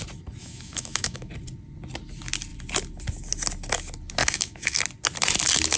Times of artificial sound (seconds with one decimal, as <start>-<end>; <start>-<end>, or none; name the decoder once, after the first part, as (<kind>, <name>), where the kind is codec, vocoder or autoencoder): 0.4-1.3 (autoencoder, DAC-VAE); 4.2-4.8